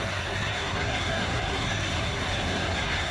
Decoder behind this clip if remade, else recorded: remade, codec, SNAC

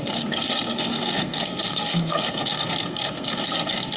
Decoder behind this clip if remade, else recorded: remade, codec, SNAC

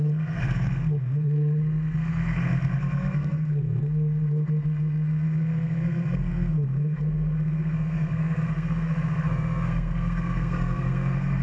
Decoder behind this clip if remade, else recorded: remade, codec, SNAC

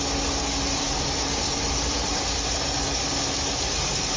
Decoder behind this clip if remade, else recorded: recorded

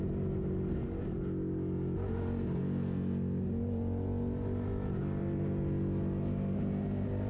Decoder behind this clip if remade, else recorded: recorded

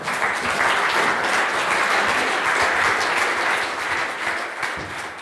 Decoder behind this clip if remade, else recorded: recorded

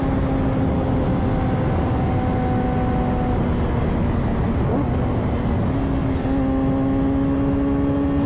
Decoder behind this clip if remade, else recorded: recorded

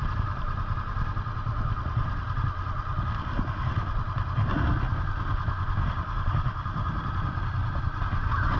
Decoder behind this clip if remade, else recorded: recorded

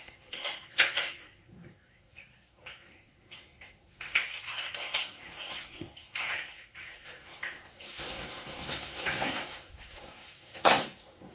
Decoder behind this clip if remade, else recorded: remade, codec, SNAC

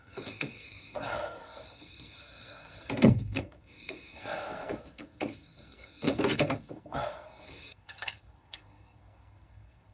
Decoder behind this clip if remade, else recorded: remade, codec, SNAC